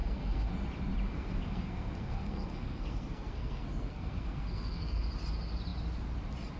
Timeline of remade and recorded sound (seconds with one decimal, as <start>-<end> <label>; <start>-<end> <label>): 0.0-0.5 remade; 0.5-1.1 recorded; 1.1-5.1 remade; 5.1-6.6 recorded